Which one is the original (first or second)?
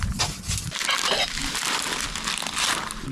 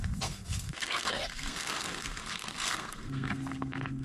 first